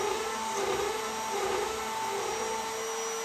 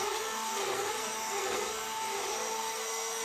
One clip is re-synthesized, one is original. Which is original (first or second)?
first